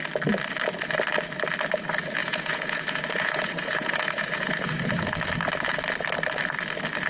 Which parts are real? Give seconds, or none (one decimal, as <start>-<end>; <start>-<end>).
0.0-2.2; 5.1-7.1